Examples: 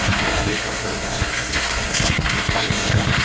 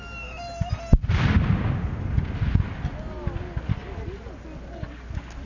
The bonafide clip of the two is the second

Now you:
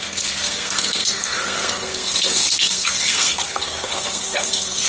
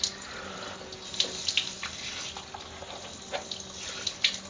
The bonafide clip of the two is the second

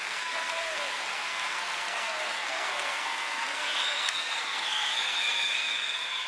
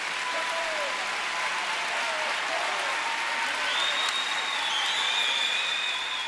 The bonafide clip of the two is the second